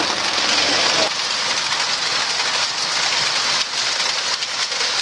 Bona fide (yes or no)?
yes